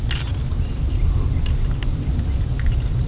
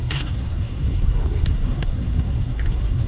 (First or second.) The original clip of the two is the first